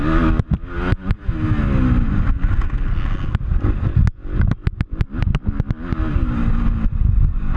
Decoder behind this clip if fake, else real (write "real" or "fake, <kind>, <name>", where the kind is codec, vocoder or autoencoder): real